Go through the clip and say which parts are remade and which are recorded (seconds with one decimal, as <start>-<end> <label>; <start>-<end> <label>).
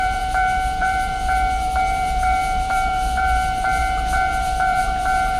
0.0-5.4 remade